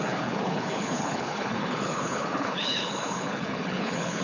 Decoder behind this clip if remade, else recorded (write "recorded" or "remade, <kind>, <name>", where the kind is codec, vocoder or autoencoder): remade, codec, HILCodec